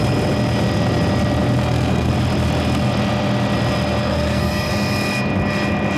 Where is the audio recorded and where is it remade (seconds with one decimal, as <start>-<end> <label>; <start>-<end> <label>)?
0.0-1.6 recorded; 1.6-2.1 remade; 2.1-4.0 recorded; 4.0-4.7 remade; 4.7-6.0 recorded